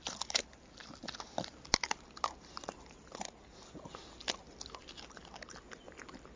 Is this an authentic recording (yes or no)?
yes